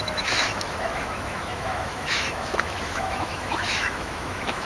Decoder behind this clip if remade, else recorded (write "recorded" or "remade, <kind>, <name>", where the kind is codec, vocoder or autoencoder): remade, autoencoder, DAC-VAE